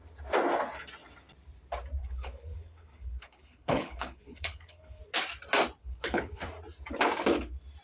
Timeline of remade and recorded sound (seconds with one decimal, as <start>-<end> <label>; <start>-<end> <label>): 0.0-2.0 recorded; 2.0-5.0 remade; 5.0-5.8 recorded; 5.8-6.4 remade; 6.4-7.8 recorded